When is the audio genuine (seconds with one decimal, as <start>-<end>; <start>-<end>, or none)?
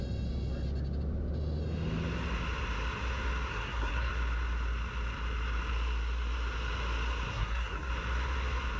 0.0-3.5; 4.1-7.3; 7.9-8.8